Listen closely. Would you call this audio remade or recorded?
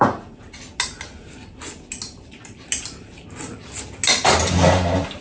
recorded